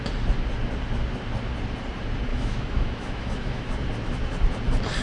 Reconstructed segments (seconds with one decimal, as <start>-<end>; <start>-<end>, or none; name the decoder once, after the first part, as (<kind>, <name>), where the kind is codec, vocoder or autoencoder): 2.3-3.7 (autoencoder, DAC-VAE)

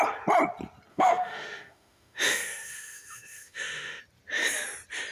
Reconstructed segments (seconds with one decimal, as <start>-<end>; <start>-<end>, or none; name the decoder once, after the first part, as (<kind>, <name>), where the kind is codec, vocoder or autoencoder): 0.9-4.0 (autoencoder, DAC-VAE)